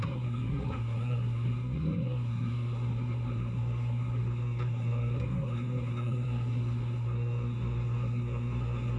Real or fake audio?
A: fake